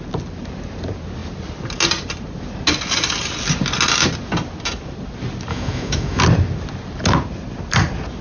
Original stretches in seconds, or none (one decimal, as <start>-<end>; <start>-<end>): 0.0-5.5; 6.2-8.2